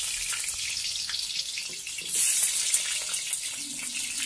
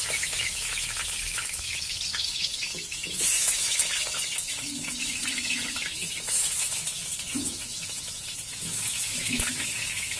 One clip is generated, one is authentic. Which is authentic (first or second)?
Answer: first